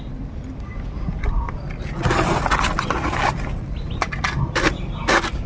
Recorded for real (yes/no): no